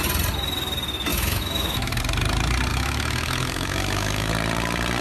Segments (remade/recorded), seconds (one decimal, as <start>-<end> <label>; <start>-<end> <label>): 0.0-1.1 recorded; 1.1-2.0 remade; 2.0-2.7 recorded; 2.7-4.3 remade; 4.3-5.0 recorded